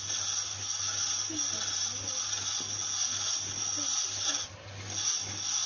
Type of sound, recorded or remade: recorded